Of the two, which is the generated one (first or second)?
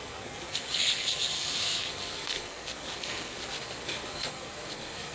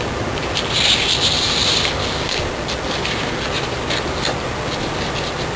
first